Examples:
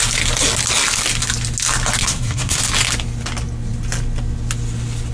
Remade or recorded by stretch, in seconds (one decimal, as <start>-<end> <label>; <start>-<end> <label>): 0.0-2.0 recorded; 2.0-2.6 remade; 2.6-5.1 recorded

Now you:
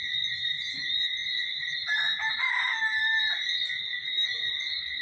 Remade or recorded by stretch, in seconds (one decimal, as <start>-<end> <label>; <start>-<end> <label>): 0.0-5.0 recorded

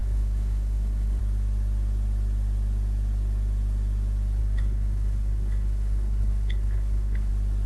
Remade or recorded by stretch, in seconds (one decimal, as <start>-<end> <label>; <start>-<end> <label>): 0.0-1.2 remade; 1.2-4.4 recorded; 4.4-7.3 remade; 7.3-7.7 recorded

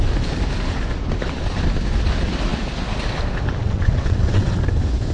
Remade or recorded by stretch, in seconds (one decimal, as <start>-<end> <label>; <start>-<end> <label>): 0.0-3.6 recorded; 3.6-4.5 remade; 4.5-5.1 recorded

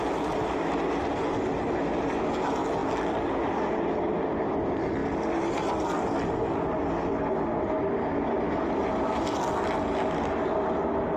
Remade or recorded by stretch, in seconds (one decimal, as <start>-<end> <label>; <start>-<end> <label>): 0.0-11.2 recorded

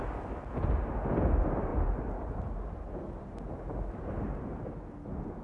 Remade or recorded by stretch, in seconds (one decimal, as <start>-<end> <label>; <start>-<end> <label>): 0.0-5.4 recorded

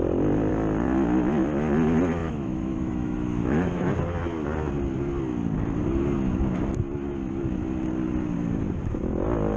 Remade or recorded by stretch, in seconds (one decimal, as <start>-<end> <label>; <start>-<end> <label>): 0.0-2.2 recorded; 2.2-3.9 remade; 3.9-9.6 recorded

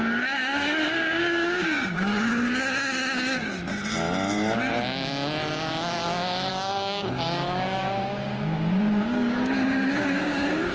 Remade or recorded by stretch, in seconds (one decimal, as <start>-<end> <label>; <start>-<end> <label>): 0.0-3.7 remade; 3.7-6.5 recorded; 6.5-10.7 remade